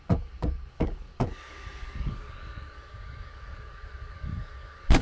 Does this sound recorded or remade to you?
remade